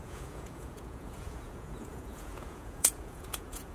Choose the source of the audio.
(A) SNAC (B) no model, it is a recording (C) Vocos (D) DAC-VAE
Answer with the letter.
C